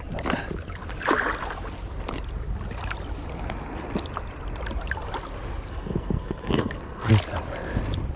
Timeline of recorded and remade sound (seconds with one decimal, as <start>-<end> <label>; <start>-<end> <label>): 0.0-5.7 recorded; 5.7-7.1 remade; 7.1-8.2 recorded